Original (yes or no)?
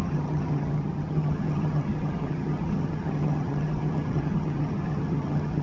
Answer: no